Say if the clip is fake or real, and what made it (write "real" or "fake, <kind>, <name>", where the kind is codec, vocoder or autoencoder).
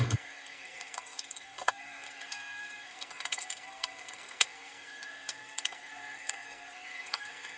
fake, codec, SNAC